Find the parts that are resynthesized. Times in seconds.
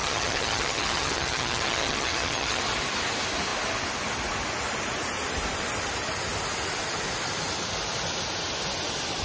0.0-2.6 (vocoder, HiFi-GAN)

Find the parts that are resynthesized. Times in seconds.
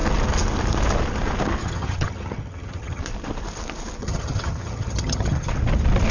1.6-3.0 (vocoder, HiFi-GAN); 4.0-5.5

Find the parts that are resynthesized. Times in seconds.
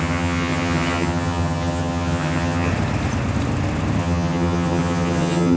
0.0-2.7 (vocoder, HiFi-GAN); 4.0-5.6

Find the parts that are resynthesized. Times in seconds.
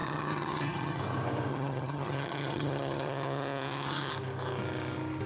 0.0-1.0 (vocoder, HiFi-GAN); 1.5-4.1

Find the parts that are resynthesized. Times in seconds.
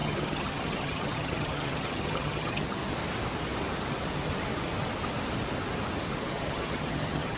0.0-2.8 (vocoder, HiFi-GAN); 6.2-7.4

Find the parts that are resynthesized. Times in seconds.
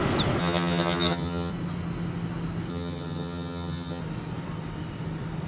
0.4-1.5 (vocoder, HiFi-GAN); 2.7-4.0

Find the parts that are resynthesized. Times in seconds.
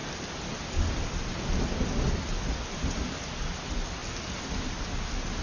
none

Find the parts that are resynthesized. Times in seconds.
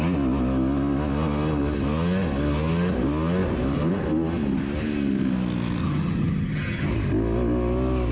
5.8-6.9 (vocoder, HiFi-GAN)